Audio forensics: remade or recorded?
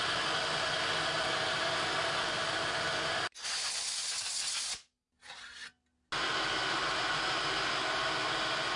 recorded